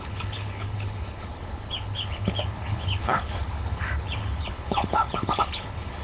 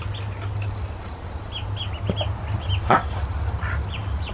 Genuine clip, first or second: second